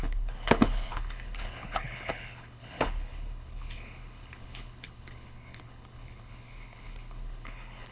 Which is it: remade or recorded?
remade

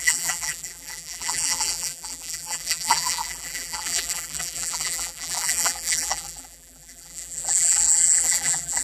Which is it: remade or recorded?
remade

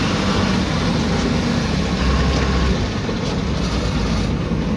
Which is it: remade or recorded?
recorded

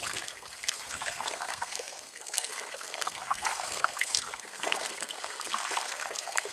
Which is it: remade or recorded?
remade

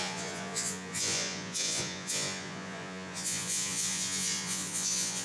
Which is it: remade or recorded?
remade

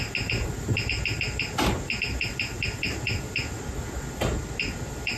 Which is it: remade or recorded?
recorded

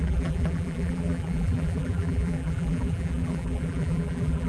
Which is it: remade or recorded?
remade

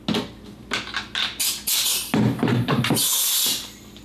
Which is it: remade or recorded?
recorded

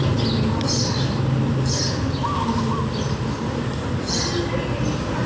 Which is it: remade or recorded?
recorded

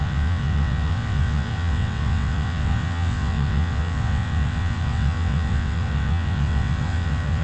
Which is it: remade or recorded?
remade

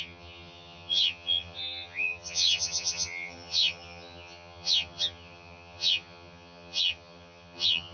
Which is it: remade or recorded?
remade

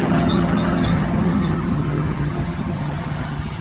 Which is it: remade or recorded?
remade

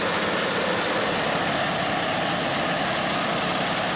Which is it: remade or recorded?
recorded